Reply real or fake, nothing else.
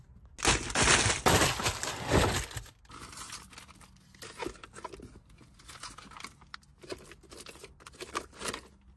real